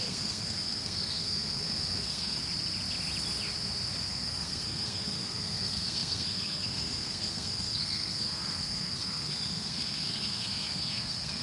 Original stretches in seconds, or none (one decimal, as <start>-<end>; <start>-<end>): 2.4-4.1